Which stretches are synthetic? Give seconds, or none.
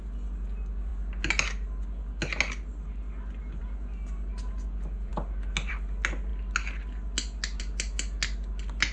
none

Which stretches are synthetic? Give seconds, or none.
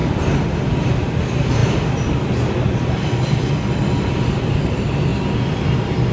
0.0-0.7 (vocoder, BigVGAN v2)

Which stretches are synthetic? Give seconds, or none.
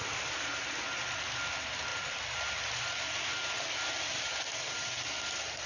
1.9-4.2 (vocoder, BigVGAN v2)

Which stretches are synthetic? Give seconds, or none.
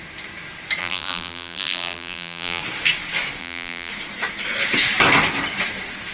0.8-2.6 (vocoder, BigVGAN v2); 3.4-3.9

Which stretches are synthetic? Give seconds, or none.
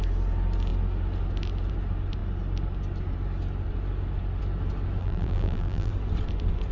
5.0-5.9 (vocoder, BigVGAN v2)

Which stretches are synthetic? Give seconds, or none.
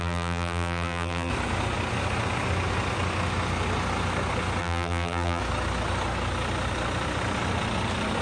0.0-1.3 (vocoder, BigVGAN v2); 4.6-5.4